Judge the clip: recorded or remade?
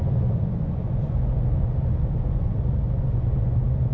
remade